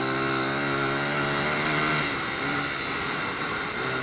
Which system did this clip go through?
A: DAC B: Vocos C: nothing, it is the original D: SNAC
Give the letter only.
C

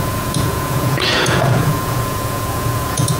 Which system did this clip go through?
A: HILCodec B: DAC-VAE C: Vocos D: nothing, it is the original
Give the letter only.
C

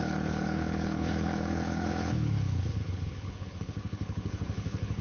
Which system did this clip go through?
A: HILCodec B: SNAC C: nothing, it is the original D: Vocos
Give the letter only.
A